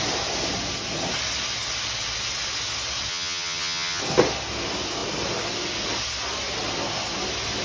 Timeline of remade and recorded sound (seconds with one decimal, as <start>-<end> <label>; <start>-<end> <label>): 0.0-3.1 recorded; 3.1-4.0 remade; 4.0-7.6 recorded